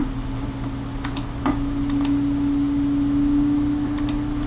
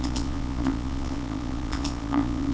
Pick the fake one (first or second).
second